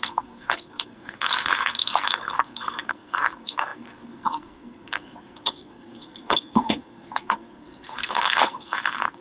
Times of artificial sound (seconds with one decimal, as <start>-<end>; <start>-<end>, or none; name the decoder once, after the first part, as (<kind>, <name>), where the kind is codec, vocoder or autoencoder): 0.0-9.2 (codec, SNAC)